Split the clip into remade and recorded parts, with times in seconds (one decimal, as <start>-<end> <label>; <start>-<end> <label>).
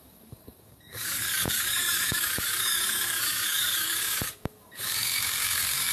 0.0-5.9 remade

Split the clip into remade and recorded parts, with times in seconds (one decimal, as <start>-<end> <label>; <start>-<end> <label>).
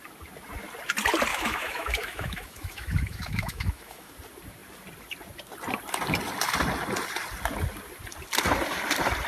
0.0-1.3 recorded; 1.3-4.1 remade; 4.1-9.3 recorded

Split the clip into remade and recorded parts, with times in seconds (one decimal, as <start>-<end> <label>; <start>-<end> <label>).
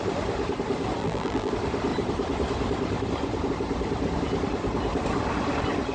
0.0-1.0 recorded; 1.0-1.5 remade; 1.5-5.9 recorded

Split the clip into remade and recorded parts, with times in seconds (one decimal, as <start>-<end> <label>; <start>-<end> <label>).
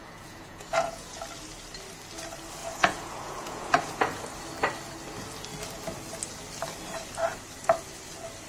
0.0-1.2 remade; 1.2-2.6 recorded; 2.6-4.2 remade; 4.2-8.5 recorded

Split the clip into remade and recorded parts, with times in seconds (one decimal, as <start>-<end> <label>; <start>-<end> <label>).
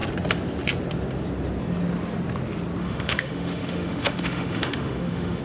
0.0-2.8 recorded; 2.8-5.4 remade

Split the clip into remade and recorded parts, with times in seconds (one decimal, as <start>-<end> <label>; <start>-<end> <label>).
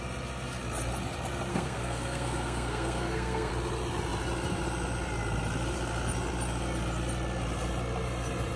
0.0-1.5 recorded; 1.5-3.5 remade; 3.5-8.6 recorded